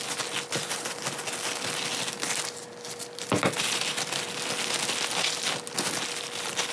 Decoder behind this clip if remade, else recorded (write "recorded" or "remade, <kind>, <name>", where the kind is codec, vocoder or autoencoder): recorded